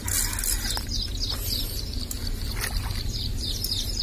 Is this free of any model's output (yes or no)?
yes